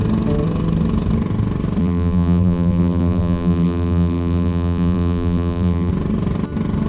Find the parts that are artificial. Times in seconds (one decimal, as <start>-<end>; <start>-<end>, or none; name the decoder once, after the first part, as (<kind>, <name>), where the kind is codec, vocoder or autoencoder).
1.8-5.9 (vocoder, BigVGAN v2)

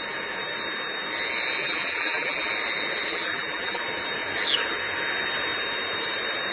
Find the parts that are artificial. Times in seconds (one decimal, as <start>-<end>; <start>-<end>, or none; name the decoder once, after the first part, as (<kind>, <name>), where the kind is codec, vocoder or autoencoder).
1.6-2.5 (vocoder, BigVGAN v2); 3.1-3.8

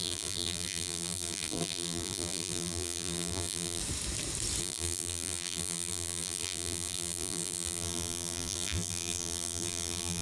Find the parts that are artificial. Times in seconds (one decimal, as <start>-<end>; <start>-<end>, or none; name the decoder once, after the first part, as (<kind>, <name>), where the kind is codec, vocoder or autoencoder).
0.0-3.8 (vocoder, BigVGAN v2); 4.6-10.2

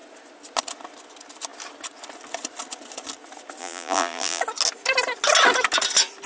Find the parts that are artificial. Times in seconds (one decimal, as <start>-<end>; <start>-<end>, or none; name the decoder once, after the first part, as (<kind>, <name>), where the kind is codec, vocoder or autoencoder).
3.6-4.4 (vocoder, BigVGAN v2)

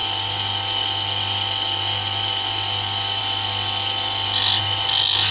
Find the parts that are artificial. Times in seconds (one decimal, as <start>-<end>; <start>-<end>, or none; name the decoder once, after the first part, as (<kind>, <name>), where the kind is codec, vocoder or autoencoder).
0.0-3.2 (vocoder, BigVGAN v2)

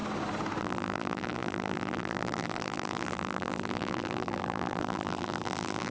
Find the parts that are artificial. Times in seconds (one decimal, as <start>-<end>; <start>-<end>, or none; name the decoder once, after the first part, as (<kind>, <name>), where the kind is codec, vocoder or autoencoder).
0.6-5.9 (vocoder, BigVGAN v2)